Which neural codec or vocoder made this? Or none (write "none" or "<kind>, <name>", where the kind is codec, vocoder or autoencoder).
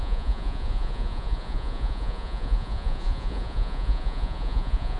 vocoder, Vocos